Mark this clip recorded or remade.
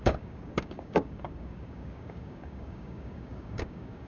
remade